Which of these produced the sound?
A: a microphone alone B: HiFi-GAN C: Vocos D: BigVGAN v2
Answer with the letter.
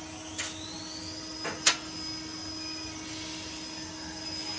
A